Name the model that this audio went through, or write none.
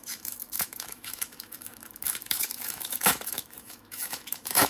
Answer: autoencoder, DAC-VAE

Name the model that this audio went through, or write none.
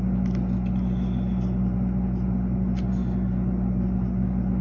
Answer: none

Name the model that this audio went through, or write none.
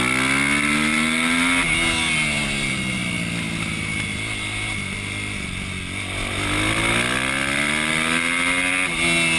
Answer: none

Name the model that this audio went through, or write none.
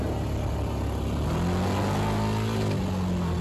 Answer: none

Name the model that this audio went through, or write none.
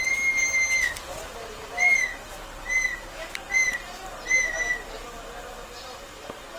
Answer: none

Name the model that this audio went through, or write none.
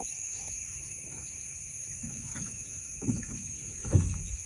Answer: autoencoder, DAC-VAE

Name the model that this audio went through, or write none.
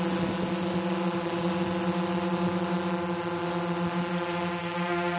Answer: none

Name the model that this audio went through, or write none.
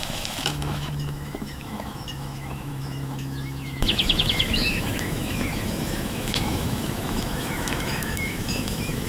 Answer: autoencoder, DAC-VAE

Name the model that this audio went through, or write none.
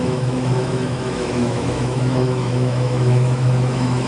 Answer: autoencoder, DAC-VAE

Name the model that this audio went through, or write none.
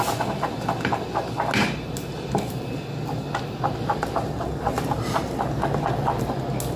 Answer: none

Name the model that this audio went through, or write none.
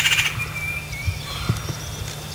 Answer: none